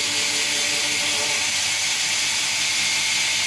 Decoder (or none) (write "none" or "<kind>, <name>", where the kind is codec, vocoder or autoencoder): none